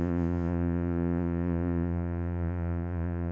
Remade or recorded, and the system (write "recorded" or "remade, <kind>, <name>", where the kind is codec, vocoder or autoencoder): remade, vocoder, Vocos